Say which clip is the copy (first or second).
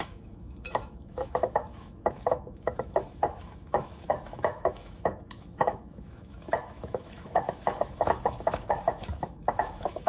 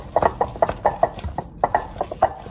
first